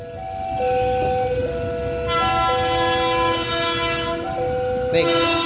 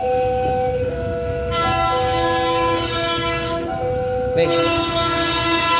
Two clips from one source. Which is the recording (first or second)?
first